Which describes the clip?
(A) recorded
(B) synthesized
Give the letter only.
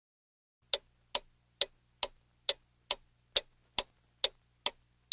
A